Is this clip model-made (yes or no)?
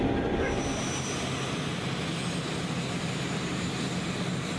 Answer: no